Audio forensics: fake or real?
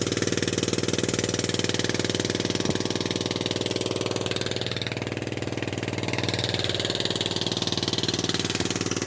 real